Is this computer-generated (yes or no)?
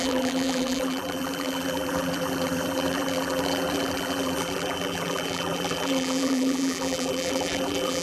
yes